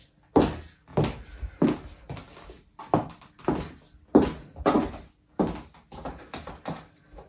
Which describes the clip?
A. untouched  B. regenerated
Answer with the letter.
A